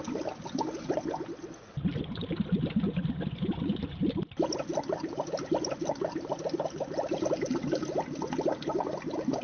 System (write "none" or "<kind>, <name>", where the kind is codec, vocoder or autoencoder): none